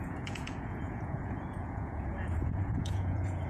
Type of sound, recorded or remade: remade